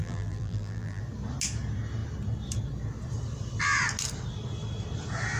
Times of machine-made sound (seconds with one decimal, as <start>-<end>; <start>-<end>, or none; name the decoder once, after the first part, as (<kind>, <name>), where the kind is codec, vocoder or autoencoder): 0.0-1.0 (vocoder, BigVGAN v2)